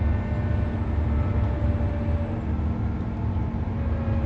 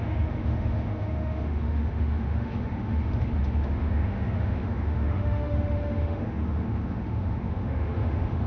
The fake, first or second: second